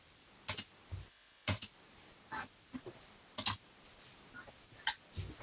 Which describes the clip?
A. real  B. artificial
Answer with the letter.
A